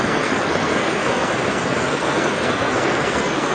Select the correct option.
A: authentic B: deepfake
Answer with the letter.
B